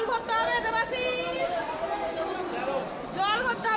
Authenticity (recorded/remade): recorded